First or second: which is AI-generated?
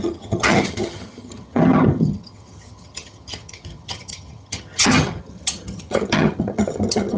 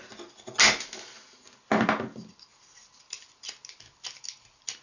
first